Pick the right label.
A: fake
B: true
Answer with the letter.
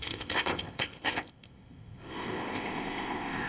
A